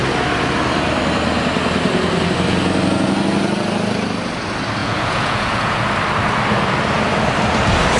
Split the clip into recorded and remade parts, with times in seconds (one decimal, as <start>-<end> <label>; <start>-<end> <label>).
0.0-4.8 recorded; 4.8-5.8 remade; 5.8-8.0 recorded